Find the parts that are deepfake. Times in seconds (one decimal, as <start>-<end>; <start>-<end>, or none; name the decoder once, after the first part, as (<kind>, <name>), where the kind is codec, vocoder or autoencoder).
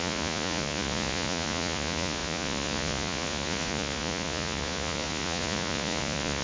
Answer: 0.0-6.4 (vocoder, Vocos)